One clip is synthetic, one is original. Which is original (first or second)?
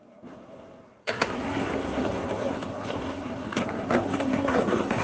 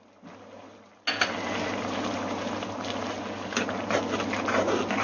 second